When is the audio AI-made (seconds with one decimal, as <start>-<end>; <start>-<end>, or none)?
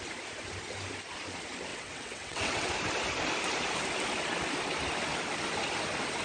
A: 1.7-2.7